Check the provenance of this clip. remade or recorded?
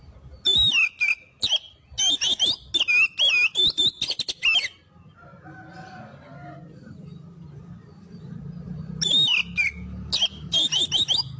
recorded